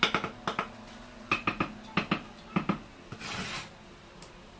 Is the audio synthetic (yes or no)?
no